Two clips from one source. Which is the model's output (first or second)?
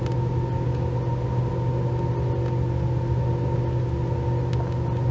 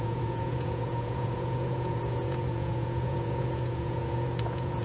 second